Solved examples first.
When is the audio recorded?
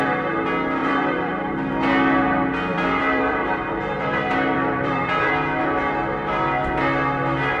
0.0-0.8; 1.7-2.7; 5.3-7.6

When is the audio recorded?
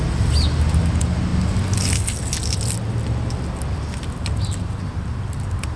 0.0-5.8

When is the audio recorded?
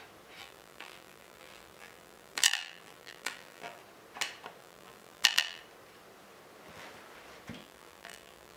0.0-0.4; 3.8-4.6; 5.6-7.6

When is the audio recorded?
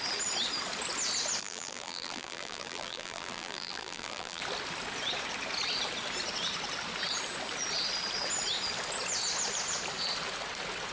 0.0-1.4; 4.4-10.9